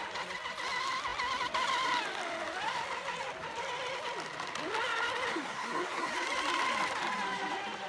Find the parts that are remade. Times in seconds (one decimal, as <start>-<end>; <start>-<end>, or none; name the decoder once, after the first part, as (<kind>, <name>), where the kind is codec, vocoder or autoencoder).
5.3-6.1 (codec, SNAC)